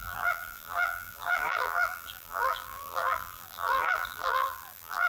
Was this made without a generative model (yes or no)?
no